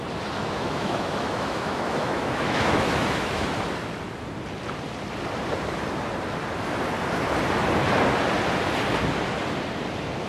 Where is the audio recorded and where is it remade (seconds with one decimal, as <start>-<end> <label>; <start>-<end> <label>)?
0.0-0.4 recorded; 0.4-3.5 remade; 3.5-10.3 recorded